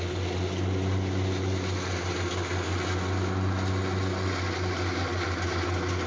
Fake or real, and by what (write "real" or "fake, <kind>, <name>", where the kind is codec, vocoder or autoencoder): real